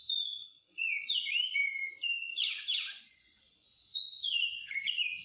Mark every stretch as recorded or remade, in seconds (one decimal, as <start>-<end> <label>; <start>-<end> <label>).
0.0-5.2 remade